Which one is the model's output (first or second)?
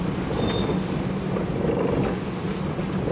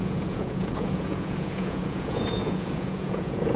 second